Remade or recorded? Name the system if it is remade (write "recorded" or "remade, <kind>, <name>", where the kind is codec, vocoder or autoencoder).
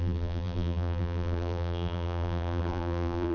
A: remade, vocoder, BigVGAN v2